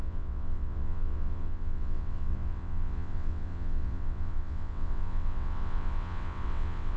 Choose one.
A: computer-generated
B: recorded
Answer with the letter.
A